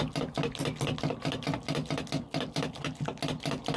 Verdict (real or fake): real